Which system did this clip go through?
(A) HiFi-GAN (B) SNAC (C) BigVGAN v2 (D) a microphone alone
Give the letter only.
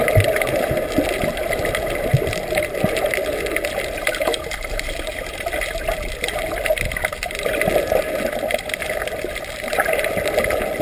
D